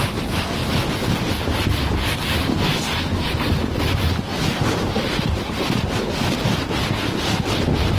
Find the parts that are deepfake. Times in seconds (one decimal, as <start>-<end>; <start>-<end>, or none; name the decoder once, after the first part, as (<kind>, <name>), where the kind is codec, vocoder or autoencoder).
0.6-1.3 (vocoder, BigVGAN v2); 3.6-5.9